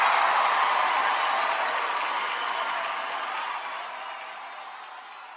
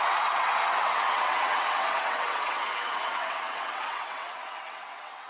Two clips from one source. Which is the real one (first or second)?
first